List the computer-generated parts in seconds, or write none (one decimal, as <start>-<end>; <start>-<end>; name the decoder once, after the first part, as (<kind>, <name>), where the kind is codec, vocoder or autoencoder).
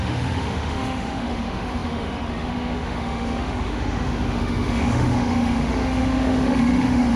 0.0-7.2 (autoencoder, DAC-VAE)